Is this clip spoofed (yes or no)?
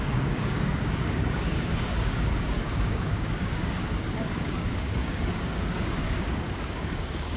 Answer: yes